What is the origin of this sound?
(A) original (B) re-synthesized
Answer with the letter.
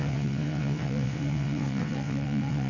B